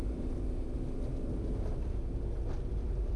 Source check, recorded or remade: recorded